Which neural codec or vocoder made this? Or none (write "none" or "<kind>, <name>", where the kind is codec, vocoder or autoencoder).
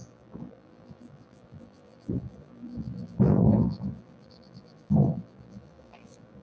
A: vocoder, BigVGAN v2